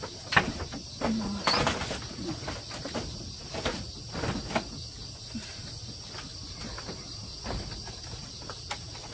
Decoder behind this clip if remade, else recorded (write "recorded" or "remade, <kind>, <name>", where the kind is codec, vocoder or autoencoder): recorded